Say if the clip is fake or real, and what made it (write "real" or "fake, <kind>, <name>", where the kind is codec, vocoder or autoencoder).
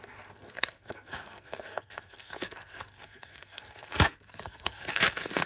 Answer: fake, codec, SNAC